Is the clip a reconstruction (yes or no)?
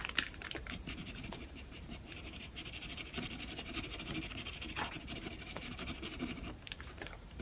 yes